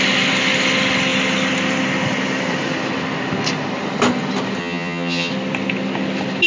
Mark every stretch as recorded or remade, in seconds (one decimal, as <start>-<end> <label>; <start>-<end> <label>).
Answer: 0.0-4.6 recorded; 4.6-5.3 remade; 5.3-6.5 recorded